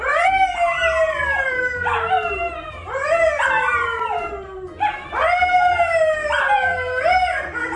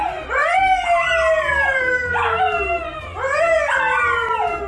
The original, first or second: second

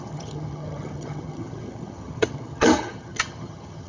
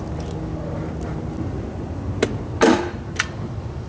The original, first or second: second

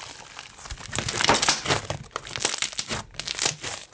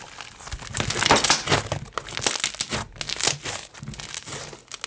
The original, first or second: second